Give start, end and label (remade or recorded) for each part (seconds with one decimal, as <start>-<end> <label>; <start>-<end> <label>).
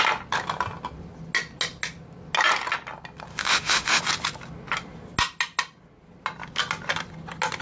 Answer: 0.0-3.3 recorded; 3.3-4.0 remade; 4.0-7.6 recorded